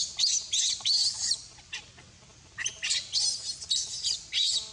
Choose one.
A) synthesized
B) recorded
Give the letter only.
B